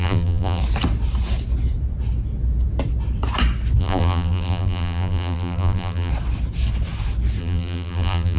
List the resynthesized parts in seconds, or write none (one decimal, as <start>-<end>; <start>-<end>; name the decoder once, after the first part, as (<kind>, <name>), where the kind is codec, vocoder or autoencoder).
0.0-0.6 (vocoder, BigVGAN v2); 3.8-6.1; 7.4-8.4